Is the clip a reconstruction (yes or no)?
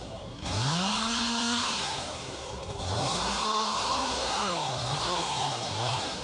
yes